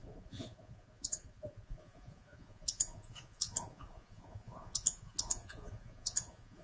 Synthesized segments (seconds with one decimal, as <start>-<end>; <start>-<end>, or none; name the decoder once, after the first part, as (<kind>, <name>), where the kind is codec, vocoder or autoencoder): 0.0-6.6 (vocoder, Vocos)